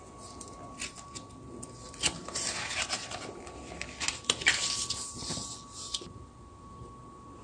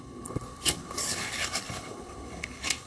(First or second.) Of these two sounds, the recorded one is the first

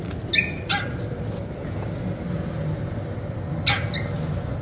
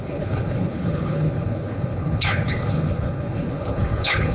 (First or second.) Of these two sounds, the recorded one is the first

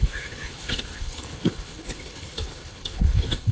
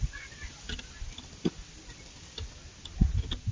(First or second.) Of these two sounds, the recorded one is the second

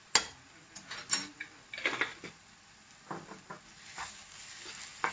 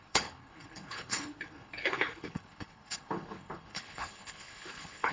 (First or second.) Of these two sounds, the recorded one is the first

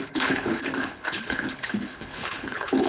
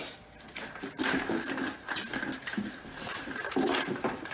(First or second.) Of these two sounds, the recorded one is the second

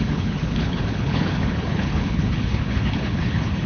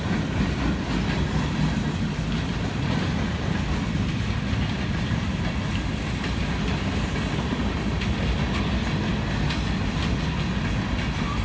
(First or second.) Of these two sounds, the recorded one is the second